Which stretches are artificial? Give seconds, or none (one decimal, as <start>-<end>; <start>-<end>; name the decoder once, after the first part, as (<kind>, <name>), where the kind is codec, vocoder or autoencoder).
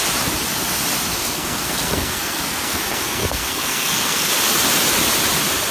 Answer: 1.1-4.3 (codec, SNAC)